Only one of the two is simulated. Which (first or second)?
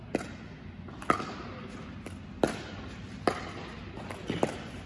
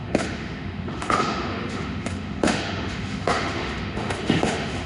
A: second